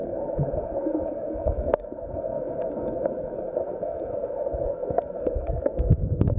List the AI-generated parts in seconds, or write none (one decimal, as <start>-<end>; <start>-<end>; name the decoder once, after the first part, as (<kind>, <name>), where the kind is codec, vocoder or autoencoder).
0.0-6.4 (codec, SNAC)